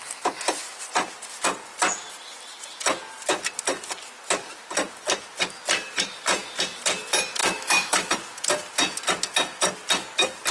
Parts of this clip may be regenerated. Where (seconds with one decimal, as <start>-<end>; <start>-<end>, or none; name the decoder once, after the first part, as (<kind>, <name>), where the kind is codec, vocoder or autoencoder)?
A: 7.4-8.1 (autoencoder, DAC-VAE)